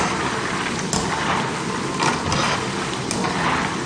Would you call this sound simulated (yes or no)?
no